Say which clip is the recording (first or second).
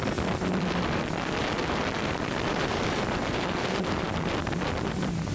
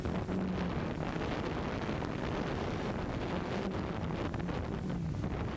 second